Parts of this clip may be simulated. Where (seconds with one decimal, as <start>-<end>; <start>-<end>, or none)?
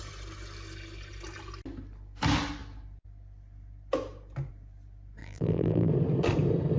5.2-5.9